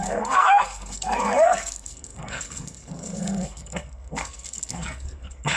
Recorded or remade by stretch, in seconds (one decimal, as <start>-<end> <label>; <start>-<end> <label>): 0.0-5.6 remade